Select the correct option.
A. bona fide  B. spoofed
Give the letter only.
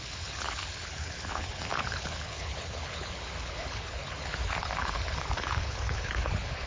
B